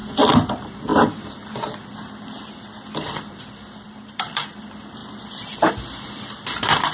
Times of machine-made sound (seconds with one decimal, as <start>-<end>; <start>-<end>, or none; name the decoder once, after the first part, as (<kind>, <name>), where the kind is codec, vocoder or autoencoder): 0.9-4.6 (vocoder, BigVGAN v2)